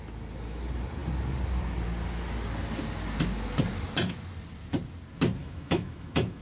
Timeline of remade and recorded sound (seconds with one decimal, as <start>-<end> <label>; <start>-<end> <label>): 0.0-5.4 recorded; 5.4-6.4 remade